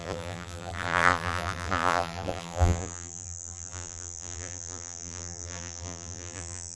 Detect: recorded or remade remade